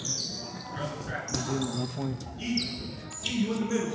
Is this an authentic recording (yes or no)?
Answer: yes